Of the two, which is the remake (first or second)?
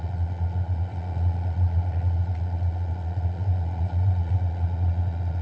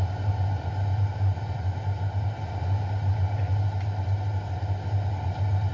first